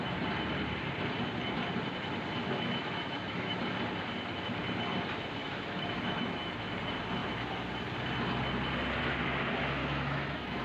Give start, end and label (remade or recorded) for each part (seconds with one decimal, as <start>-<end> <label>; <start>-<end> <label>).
0.0-2.4 recorded; 2.4-3.6 remade; 3.6-5.4 recorded; 5.4-6.7 remade; 6.7-9.8 recorded; 9.8-10.6 remade